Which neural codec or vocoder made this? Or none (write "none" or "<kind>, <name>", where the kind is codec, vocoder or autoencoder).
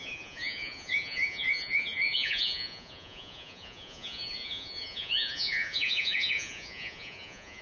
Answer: vocoder, Vocos